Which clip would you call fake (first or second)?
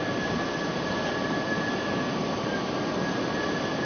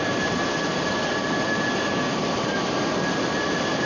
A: first